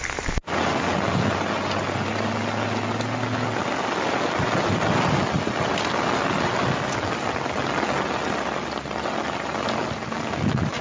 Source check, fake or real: real